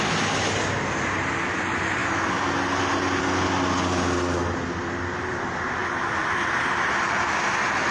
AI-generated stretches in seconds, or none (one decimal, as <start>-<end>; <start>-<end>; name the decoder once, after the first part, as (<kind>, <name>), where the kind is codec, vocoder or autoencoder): none